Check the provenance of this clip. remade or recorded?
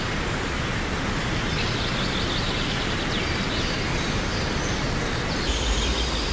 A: recorded